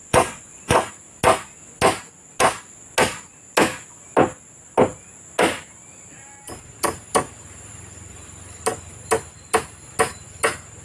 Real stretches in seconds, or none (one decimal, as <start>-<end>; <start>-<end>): 0.9-10.8